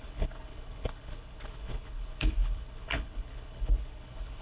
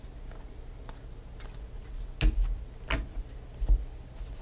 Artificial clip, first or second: first